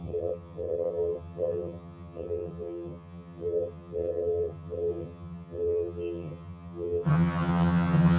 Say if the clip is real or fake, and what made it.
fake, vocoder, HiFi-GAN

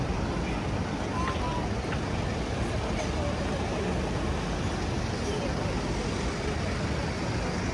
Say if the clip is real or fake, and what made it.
real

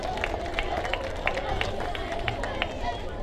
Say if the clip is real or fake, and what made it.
real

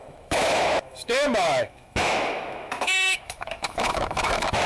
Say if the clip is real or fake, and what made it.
fake, autoencoder, DAC-VAE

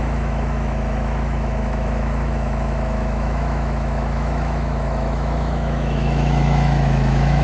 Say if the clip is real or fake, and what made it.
fake, autoencoder, DAC-VAE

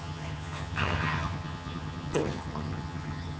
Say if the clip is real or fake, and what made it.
fake, vocoder, HiFi-GAN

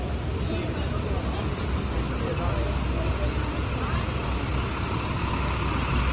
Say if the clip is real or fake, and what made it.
real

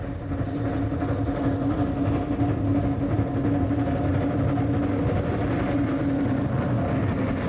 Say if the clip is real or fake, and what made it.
real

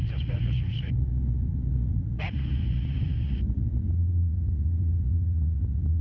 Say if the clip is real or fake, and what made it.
fake, vocoder, Vocos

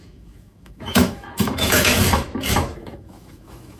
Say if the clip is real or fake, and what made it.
fake, autoencoder, DAC-VAE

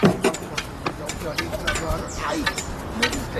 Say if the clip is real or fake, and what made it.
real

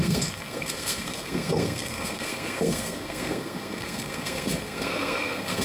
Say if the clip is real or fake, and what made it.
fake, codec, SNAC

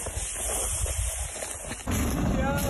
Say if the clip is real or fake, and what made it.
real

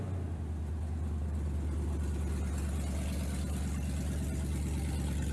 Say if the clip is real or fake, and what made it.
real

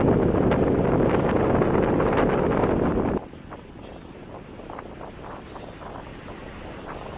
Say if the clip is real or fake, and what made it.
real